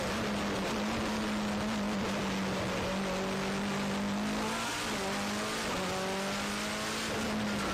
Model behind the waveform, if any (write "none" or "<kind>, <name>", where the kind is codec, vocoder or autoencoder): none